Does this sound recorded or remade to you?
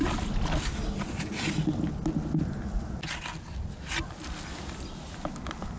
recorded